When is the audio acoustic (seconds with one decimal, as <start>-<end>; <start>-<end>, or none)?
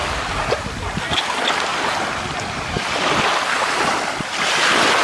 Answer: 0.5-5.0